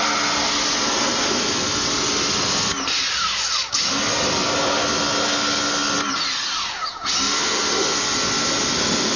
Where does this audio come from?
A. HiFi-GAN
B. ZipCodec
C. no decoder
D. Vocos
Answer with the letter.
C